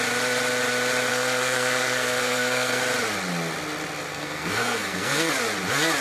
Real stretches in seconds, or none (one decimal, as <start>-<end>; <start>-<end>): 0.0-1.1; 2.8-4.1; 5.3-6.0